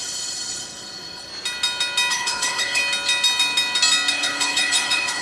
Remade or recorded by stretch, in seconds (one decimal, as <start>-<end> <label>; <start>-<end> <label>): 0.0-1.3 remade; 1.3-2.1 recorded; 2.1-2.8 remade; 2.8-4.1 recorded; 4.1-5.2 remade